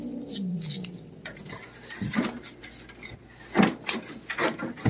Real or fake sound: real